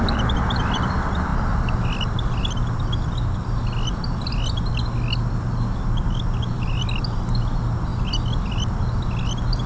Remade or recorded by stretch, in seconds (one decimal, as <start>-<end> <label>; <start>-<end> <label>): 0.0-9.7 recorded